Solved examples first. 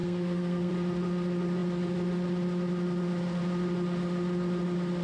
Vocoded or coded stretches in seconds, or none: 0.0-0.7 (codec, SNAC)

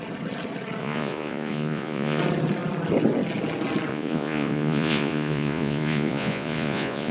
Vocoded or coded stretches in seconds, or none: 0.8-2.2 (vocoder, Vocos); 3.9-7.1

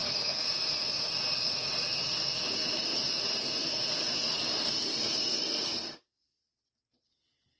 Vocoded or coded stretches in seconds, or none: 3.6-5.2 (vocoder, BigVGAN v2)

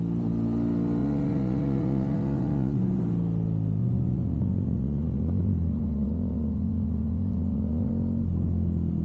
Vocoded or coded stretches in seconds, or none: 1.0-3.0 (vocoder, Vocos); 3.8-7.9